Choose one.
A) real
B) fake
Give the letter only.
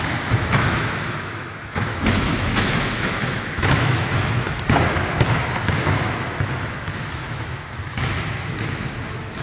B